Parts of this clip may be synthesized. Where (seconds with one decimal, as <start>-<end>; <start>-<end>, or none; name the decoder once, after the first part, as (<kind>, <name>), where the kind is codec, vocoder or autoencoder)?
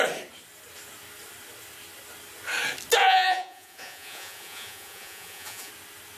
3.0-5.7 (vocoder, Vocos)